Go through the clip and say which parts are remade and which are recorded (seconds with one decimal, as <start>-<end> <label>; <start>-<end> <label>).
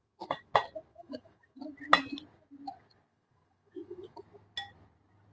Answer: 0.0-0.5 remade; 0.5-0.9 recorded; 0.9-1.6 remade; 1.6-3.1 recorded; 3.1-4.2 remade; 4.2-5.3 recorded